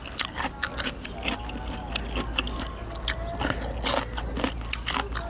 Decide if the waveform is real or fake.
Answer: real